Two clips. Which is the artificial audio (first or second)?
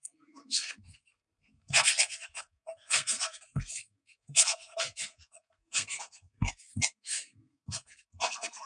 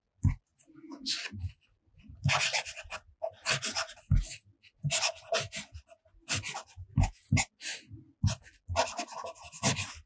first